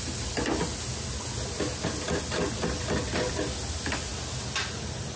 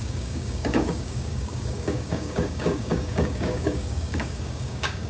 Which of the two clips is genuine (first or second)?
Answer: first